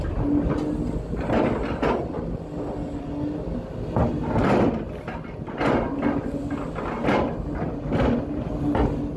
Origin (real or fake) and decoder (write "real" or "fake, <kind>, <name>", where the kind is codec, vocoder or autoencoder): real